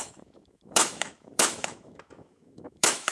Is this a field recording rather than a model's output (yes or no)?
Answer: no